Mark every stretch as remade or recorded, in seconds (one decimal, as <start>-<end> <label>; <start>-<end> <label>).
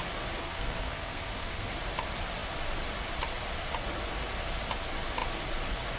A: 0.0-0.4 recorded; 0.4-1.7 remade; 1.7-6.0 recorded